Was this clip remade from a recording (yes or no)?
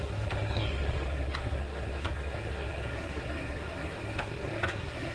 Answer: yes